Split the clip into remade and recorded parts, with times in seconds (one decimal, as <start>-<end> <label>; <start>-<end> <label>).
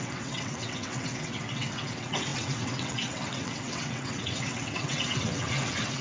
0.0-6.0 remade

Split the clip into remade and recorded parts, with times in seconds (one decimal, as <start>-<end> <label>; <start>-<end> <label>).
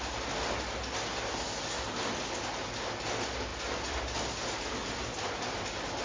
0.0-6.0 recorded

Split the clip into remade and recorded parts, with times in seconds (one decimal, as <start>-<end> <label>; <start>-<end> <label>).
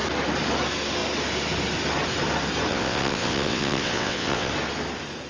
0.0-2.7 recorded; 2.7-4.5 remade; 4.5-5.3 recorded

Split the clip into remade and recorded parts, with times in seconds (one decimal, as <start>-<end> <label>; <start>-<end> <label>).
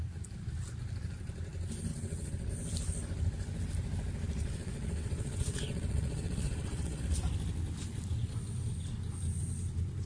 0.0-1.9 recorded; 1.9-2.5 remade; 2.5-4.4 recorded; 4.4-7.0 remade; 7.0-10.1 recorded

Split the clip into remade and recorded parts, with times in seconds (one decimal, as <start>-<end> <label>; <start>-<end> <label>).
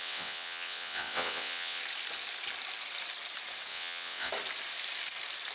0.0-1.8 remade; 1.8-3.7 recorded; 3.7-4.3 remade; 4.3-5.5 recorded